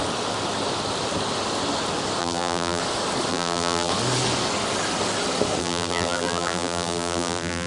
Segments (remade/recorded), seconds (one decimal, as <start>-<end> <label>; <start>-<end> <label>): 0.0-2.2 recorded; 2.2-2.8 remade; 2.8-3.3 recorded; 3.3-3.9 remade; 3.9-5.6 recorded; 5.6-7.7 remade